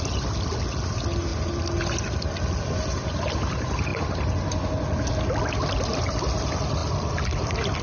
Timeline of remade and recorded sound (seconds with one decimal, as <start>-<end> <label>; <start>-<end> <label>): 0.0-7.8 recorded